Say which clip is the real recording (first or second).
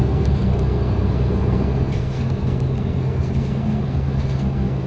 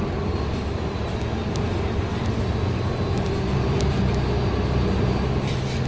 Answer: second